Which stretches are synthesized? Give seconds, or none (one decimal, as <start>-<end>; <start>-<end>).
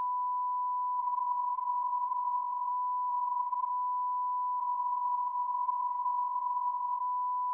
1.0-2.7; 3.1-3.7; 4.6-7.0